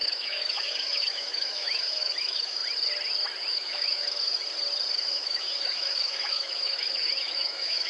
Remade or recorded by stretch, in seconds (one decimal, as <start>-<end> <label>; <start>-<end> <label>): 0.0-2.6 remade; 2.6-3.5 recorded; 3.5-4.4 remade; 4.4-4.9 recorded; 4.9-7.9 remade